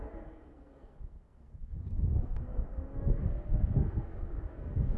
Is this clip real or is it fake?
fake